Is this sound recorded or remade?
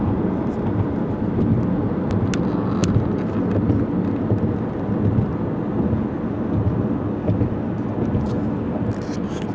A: recorded